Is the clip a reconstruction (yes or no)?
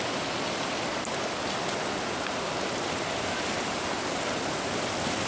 yes